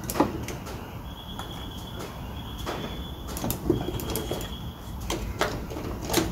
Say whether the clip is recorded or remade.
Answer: recorded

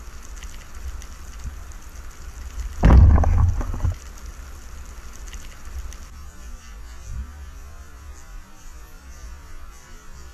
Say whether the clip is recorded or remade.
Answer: recorded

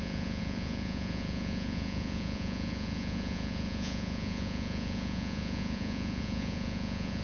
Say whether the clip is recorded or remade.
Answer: remade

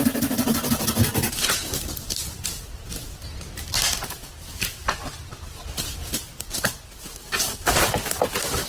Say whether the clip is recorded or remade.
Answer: recorded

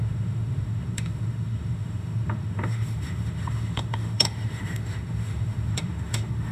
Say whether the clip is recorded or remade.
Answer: remade